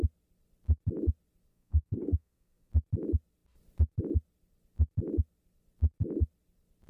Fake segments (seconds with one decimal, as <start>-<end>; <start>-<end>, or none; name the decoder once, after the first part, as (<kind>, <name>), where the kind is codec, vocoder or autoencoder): 1.5-2.7 (codec, SNAC)